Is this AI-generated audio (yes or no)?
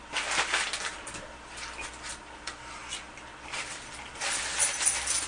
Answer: no